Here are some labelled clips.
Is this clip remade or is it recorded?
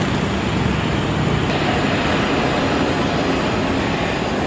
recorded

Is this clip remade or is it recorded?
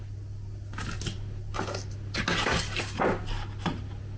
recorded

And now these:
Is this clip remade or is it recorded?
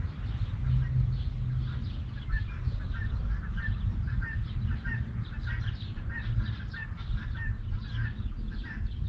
recorded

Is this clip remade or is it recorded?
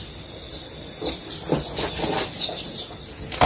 recorded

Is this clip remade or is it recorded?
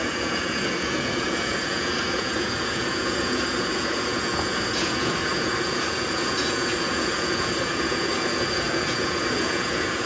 remade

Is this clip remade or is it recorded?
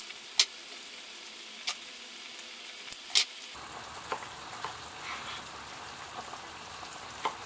recorded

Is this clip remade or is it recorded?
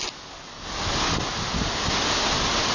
recorded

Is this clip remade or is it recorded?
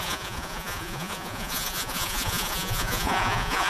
remade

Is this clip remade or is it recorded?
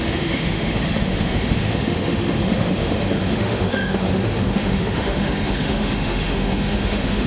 remade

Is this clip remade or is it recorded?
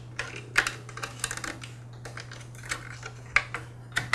recorded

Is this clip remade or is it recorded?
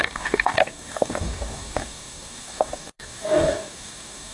remade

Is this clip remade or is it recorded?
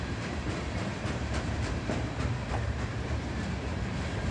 remade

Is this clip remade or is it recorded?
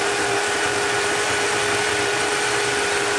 recorded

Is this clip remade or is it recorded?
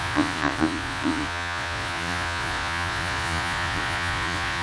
remade